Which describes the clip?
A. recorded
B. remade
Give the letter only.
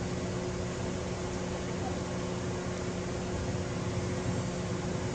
A